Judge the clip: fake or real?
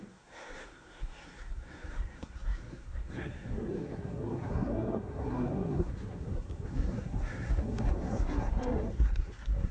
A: fake